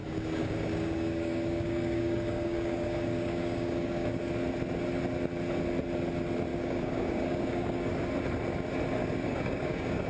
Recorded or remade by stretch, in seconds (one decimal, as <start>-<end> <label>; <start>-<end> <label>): 0.0-4.3 remade; 4.3-6.5 recorded; 6.5-8.1 remade; 8.1-9.0 recorded; 9.0-10.1 remade